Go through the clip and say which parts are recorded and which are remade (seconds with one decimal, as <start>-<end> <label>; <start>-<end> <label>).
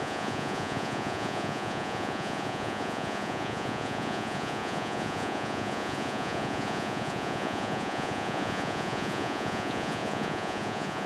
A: 0.0-11.1 remade